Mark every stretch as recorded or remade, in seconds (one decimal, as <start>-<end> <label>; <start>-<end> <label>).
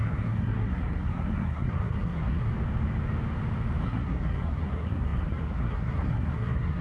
0.0-2.5 remade; 2.5-3.8 recorded; 3.8-6.8 remade